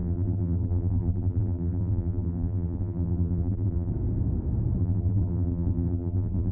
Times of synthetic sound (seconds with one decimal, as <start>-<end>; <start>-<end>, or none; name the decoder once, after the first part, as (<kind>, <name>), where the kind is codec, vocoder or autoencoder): 0.0-3.9 (vocoder, BigVGAN v2); 4.8-6.5